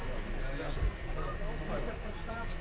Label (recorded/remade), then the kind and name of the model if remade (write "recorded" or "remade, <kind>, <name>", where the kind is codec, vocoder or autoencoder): recorded